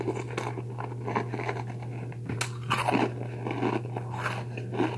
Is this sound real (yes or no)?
yes